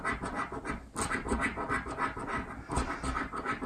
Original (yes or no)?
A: yes